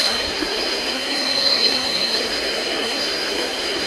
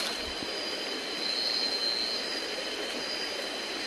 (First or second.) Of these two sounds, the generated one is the first